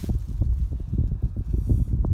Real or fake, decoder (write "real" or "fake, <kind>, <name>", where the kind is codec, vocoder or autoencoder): fake, vocoder, Vocos